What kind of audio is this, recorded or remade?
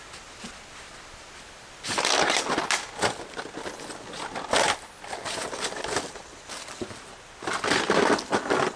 recorded